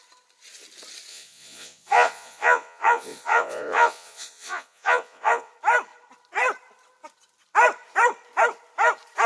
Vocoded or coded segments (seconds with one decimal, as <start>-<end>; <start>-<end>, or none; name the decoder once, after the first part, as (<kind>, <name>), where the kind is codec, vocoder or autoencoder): 1.1-5.5 (vocoder, Vocos)